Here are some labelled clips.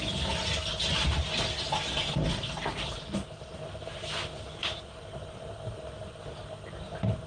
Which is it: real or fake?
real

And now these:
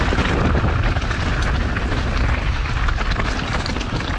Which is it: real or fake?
real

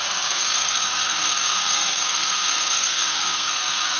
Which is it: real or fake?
fake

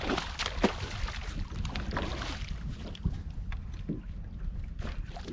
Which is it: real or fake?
real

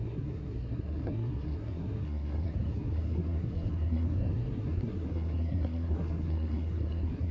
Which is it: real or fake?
fake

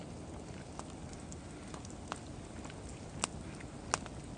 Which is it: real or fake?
real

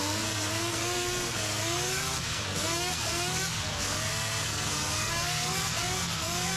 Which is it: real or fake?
fake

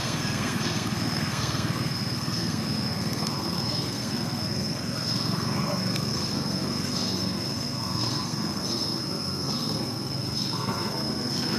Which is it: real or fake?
fake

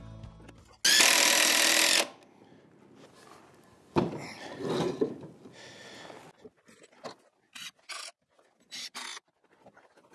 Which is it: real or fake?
real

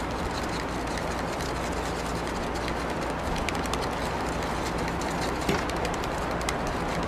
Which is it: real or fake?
real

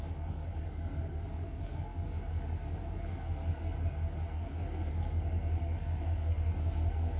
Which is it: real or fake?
fake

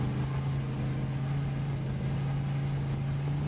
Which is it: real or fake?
real